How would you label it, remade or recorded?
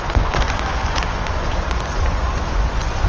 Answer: remade